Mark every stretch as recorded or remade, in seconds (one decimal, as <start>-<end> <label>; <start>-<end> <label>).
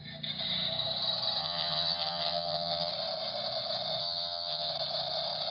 0.0-1.4 recorded; 1.4-2.9 remade; 2.9-4.0 recorded; 4.0-4.7 remade; 4.7-5.5 recorded